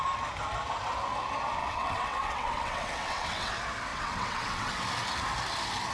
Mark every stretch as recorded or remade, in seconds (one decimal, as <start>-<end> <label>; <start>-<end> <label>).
0.0-1.6 recorded; 1.6-3.5 remade; 3.5-3.9 recorded; 3.9-4.7 remade; 4.7-5.9 recorded